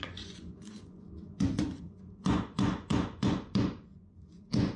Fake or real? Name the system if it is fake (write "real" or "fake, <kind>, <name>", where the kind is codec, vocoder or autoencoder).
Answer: fake, vocoder, Vocos